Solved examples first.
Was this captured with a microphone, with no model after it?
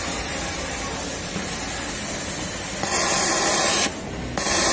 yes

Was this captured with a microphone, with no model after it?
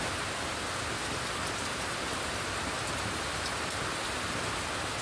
no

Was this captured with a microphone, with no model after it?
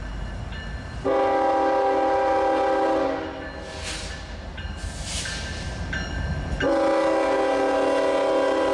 yes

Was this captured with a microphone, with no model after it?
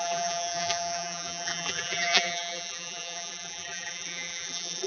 no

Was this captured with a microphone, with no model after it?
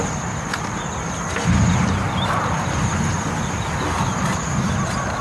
yes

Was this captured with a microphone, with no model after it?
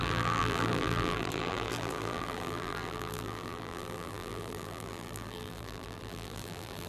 no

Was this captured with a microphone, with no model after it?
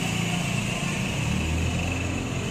yes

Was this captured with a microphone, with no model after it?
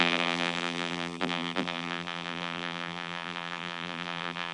no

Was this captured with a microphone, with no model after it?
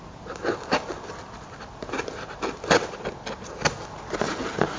yes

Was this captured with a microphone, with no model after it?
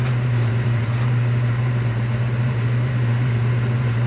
no